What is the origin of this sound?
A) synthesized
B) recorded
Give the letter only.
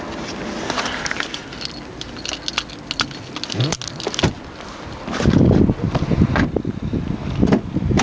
B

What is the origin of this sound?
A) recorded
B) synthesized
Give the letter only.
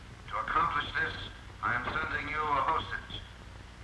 A